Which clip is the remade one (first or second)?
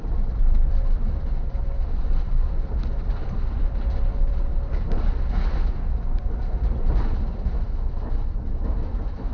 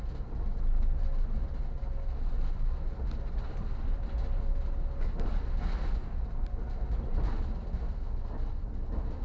first